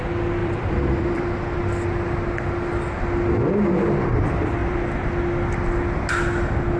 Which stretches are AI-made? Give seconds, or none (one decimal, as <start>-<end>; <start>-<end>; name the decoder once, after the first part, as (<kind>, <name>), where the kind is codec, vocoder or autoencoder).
0.4-1.6 (vocoder, BigVGAN v2); 4.6-5.1